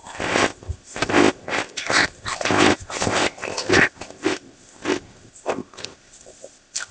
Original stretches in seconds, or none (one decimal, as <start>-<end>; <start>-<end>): none